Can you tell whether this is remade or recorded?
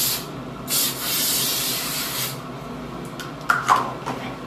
recorded